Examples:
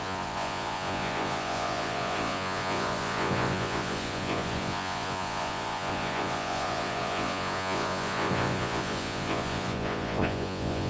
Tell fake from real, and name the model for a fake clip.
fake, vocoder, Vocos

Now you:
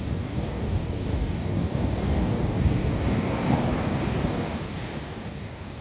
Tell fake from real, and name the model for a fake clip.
fake, codec, DAC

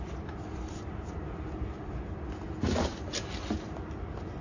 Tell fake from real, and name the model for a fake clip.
real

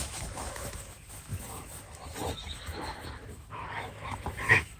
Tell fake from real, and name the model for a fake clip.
fake, autoencoder, DAC-VAE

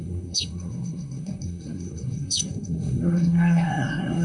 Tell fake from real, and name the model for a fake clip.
fake, codec, SNAC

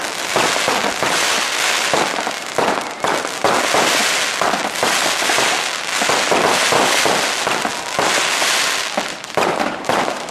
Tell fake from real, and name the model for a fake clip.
real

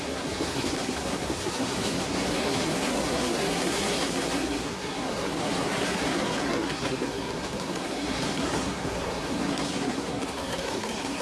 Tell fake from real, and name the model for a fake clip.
fake, codec, SNAC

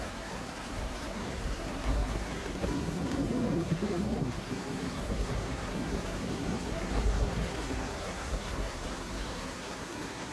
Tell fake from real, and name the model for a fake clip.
fake, codec, SNAC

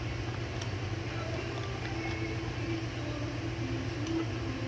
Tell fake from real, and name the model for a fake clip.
real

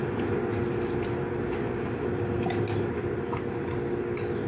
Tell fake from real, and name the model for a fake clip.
real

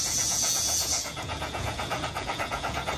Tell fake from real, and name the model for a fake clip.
fake, vocoder, Vocos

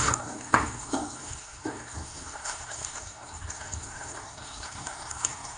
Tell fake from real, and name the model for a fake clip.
fake, codec, SNAC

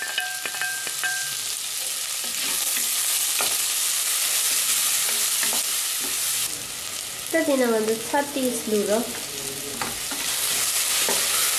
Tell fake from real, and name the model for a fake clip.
real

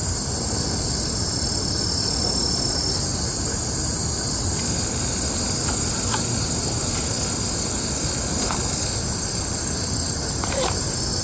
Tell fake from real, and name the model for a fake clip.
real